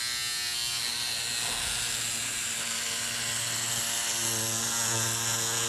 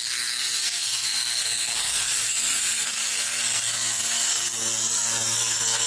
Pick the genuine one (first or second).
first